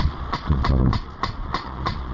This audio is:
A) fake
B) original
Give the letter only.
A